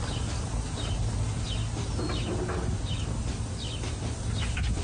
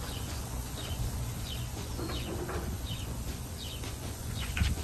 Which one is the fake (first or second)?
second